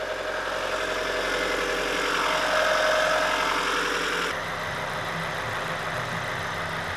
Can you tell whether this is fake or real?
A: real